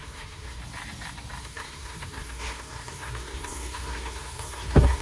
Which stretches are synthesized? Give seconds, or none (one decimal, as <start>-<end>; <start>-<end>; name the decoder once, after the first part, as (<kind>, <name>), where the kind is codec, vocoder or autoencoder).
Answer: 0.0-0.6 (codec, SNAC); 1.4-5.0